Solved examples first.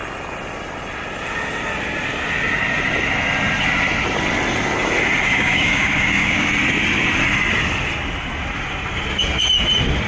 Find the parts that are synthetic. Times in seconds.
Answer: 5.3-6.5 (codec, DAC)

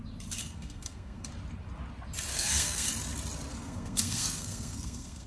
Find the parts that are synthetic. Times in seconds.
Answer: 0.4-1.3 (codec, SNAC); 2.3-2.9; 3.5-5.3

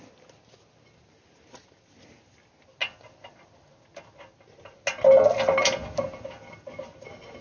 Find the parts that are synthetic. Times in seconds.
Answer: none

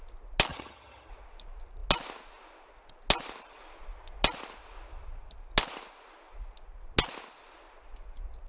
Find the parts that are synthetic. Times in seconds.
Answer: 0.5-1.1 (vocoder, HiFi-GAN)

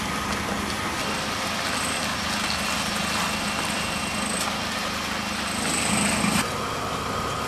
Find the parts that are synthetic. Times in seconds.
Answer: none

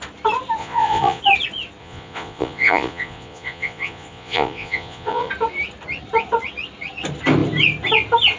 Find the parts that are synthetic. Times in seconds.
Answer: 0.6-1.2 (vocoder, Vocos); 1.8-5.3